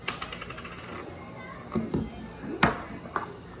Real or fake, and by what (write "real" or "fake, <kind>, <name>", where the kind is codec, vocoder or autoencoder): real